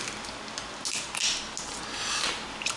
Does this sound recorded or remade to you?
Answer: recorded